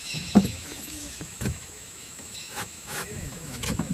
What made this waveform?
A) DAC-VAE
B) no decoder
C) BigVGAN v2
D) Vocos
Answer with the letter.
A